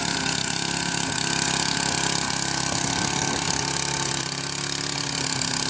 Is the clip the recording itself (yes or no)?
yes